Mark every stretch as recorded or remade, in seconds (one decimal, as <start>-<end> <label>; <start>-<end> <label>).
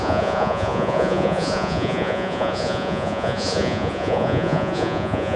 0.0-5.4 remade